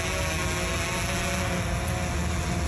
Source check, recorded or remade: recorded